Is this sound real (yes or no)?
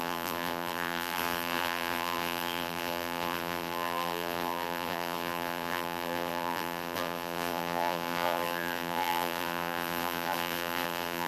no